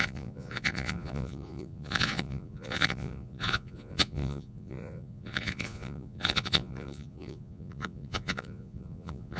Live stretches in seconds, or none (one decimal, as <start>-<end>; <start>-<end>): none